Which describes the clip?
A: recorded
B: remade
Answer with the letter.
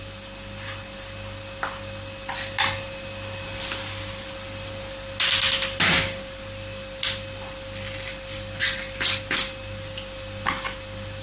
A